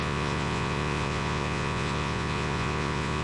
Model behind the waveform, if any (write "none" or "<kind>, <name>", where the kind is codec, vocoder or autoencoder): vocoder, Vocos